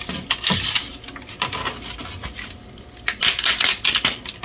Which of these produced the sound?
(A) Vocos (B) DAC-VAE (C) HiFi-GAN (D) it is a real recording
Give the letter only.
D